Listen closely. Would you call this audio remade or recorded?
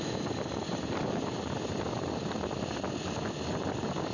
recorded